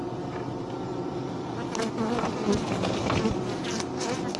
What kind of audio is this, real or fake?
real